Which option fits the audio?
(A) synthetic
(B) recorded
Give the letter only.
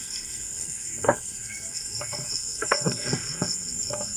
A